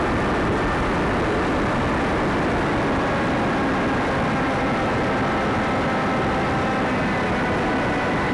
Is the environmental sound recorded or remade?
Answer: recorded